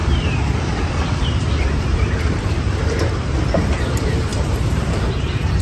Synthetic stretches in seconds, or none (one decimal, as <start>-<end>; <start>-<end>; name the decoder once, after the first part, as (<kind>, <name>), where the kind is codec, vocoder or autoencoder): 0.0-5.6 (vocoder, BigVGAN v2)